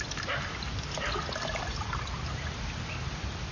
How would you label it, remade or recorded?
recorded